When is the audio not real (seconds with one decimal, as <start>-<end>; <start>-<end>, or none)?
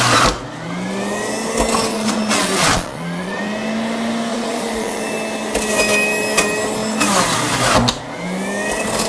1.9-3.4; 4.3-5.0